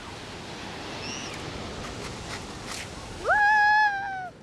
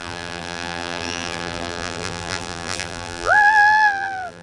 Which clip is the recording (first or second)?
first